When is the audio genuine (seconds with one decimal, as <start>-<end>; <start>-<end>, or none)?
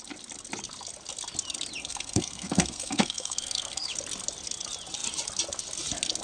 0.0-1.8; 3.9-6.2